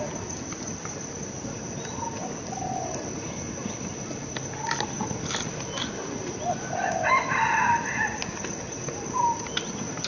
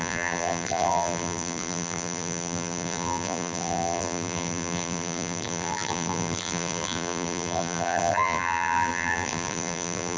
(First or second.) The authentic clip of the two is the first